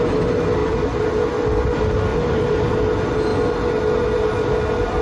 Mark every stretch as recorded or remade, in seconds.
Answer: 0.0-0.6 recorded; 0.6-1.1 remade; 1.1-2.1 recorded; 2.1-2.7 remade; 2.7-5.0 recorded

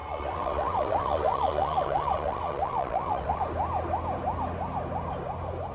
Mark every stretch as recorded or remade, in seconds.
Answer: 0.0-3.4 remade; 3.4-5.7 recorded

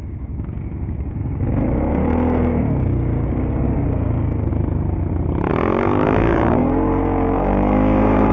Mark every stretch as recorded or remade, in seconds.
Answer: 0.0-4.5 remade; 4.5-5.5 recorded; 5.5-8.3 remade